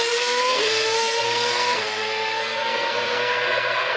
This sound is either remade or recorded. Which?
remade